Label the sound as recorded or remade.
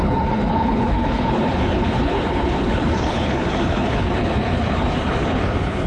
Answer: remade